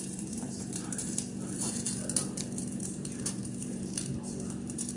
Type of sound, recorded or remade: remade